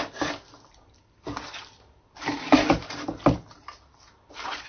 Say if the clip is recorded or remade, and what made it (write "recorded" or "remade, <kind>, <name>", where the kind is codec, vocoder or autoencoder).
remade, vocoder, BigVGAN v2